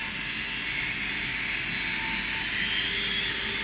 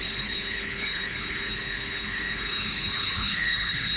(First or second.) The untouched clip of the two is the first